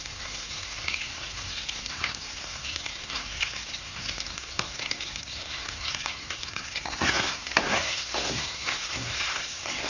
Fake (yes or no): yes